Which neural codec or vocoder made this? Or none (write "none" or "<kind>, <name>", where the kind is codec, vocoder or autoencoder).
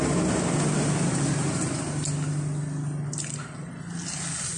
none